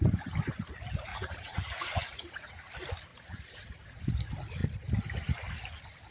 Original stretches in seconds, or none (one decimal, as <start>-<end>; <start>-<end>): 0.0-1.1; 2.7-3.1; 4.0-6.1